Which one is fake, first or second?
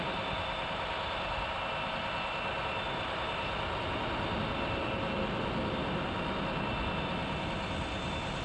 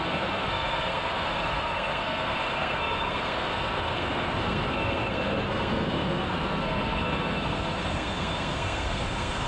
second